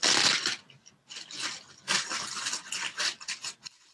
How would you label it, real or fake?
real